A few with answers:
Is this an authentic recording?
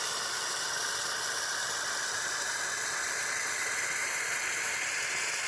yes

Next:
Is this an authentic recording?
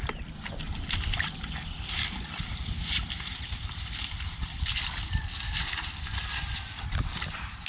yes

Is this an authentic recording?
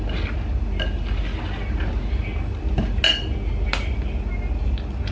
yes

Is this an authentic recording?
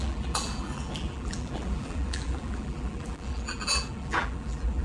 no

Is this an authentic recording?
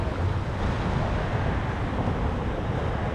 yes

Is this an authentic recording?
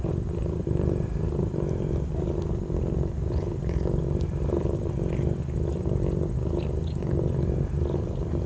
no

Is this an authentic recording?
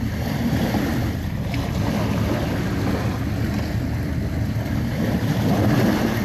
yes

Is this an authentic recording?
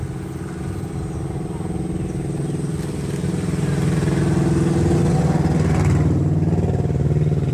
yes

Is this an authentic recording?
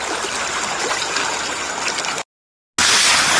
yes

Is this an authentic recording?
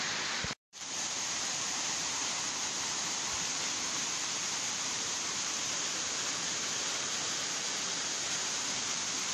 no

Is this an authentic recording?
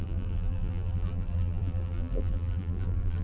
no